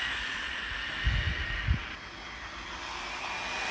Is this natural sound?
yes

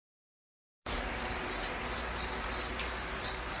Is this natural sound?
yes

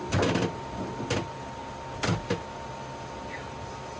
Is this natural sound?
yes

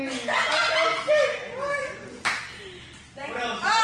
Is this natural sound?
yes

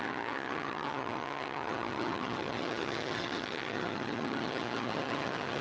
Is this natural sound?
no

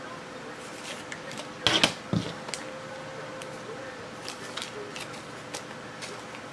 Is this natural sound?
yes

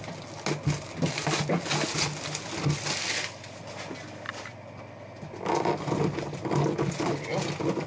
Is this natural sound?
yes